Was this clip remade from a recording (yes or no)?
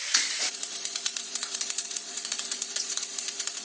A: yes